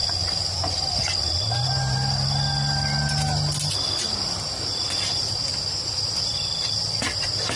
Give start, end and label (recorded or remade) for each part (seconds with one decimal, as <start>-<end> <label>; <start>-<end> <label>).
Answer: 0.0-7.6 recorded